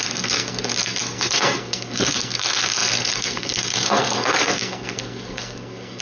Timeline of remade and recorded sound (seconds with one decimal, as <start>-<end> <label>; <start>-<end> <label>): 0.0-6.0 remade